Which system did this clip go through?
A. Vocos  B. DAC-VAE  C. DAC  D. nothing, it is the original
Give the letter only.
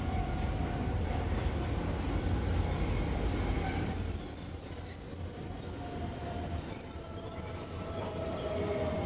D